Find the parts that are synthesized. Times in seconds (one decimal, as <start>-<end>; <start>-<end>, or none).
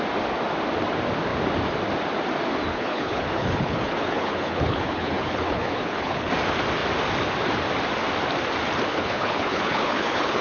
2.7-6.3; 8.9-10.4